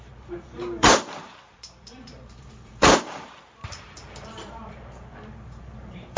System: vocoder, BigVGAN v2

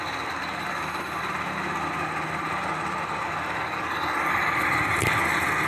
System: none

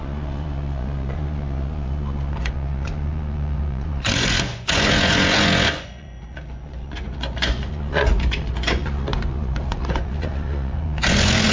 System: vocoder, Vocos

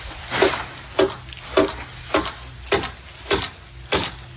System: none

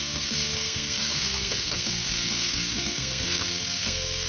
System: codec, SNAC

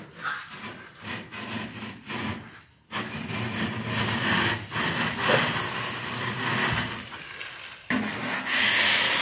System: none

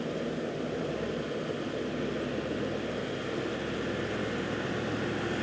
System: none